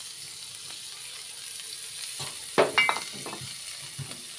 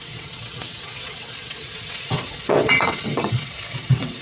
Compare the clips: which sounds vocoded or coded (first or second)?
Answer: second